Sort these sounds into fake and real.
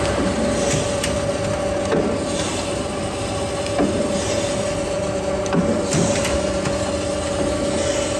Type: real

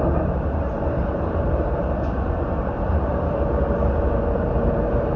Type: fake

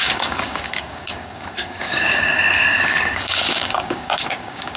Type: fake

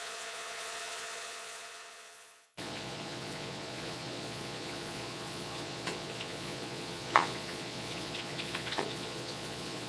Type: fake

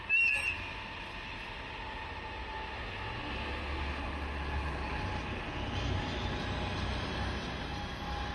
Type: real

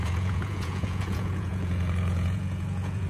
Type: fake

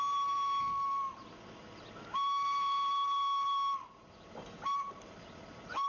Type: real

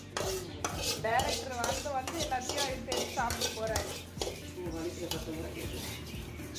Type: real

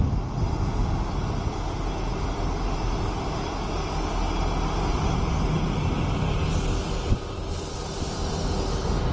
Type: real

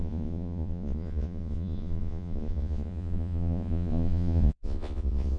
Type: fake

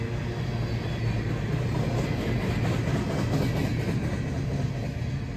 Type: real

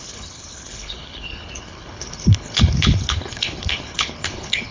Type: fake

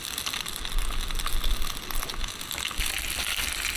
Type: real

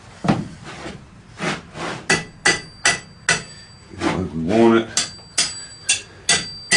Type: real